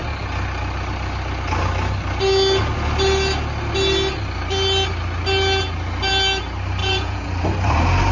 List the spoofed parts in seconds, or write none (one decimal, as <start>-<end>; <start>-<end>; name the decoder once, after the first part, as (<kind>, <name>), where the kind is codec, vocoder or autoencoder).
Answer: 6.8-7.3 (vocoder, Vocos)